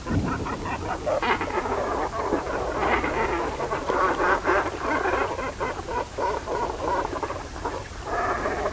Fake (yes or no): no